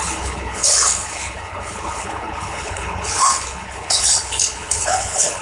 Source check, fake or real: fake